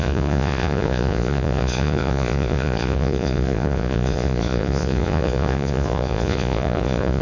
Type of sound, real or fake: fake